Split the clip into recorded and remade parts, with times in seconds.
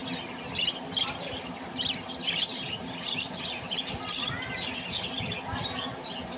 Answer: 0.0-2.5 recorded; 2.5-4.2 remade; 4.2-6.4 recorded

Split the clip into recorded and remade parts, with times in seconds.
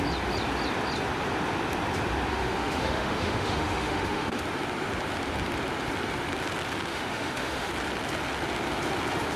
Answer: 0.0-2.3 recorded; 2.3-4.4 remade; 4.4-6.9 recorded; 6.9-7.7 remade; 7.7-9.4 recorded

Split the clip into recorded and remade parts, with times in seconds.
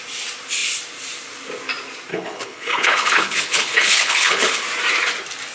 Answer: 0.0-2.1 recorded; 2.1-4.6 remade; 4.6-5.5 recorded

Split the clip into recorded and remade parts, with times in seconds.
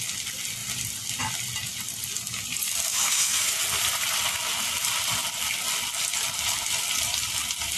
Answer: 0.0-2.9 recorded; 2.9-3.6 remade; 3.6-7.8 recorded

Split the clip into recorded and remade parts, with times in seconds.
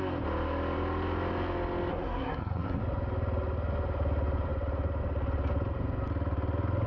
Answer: 0.0-1.9 recorded; 1.9-2.8 remade; 2.8-6.9 recorded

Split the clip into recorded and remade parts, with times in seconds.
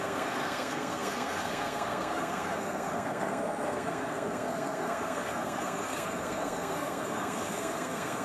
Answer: 0.0-8.2 remade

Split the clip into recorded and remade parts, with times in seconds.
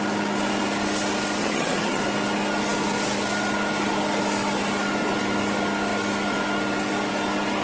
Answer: 0.0-1.4 recorded; 1.4-2.0 remade; 2.0-7.6 recorded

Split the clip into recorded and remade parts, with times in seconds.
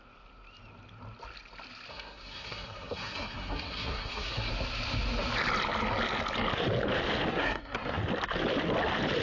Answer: 0.0-1.9 recorded; 1.9-4.5 remade; 4.5-7.3 recorded; 7.3-8.0 remade; 8.0-9.2 recorded